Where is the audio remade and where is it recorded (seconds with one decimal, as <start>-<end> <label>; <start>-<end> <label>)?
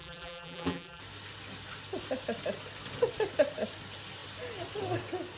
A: 0.0-1.0 remade; 1.0-5.4 recorded